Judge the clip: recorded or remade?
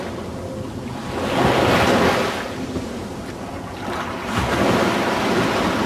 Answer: recorded